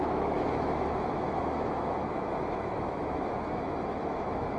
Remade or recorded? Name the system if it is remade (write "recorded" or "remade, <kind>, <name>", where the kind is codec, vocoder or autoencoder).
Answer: remade, autoencoder, DAC-VAE